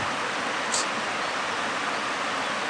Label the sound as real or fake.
real